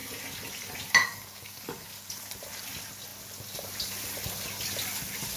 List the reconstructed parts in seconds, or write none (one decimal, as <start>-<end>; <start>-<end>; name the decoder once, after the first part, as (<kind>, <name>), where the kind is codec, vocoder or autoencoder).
1.0-2.1 (codec, DAC)